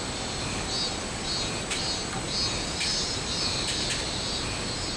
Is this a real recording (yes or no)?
yes